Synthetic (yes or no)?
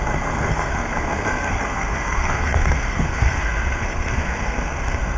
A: yes